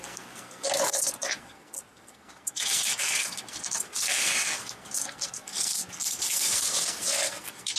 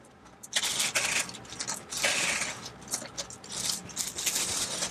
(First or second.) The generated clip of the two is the first